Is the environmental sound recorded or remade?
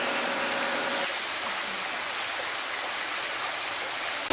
recorded